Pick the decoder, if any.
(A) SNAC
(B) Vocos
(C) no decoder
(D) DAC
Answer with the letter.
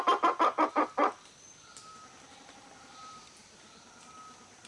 C